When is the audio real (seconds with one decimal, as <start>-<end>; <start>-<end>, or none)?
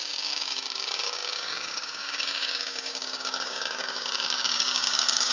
none